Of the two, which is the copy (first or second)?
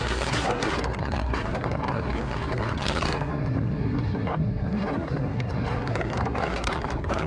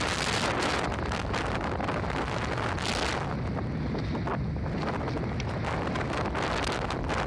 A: first